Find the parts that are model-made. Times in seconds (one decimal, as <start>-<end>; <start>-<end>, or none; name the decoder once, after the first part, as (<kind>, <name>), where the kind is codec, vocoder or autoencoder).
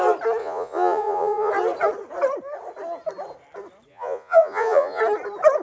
0.4-1.5 (vocoder, Vocos); 3.9-5.0